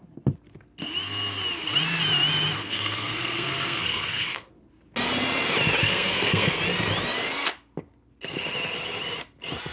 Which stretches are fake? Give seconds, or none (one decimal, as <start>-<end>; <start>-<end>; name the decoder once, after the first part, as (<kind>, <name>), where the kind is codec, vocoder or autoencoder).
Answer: 2.6-4.5 (codec, SNAC); 5.8-6.6